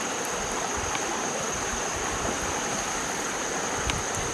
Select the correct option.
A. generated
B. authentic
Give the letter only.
B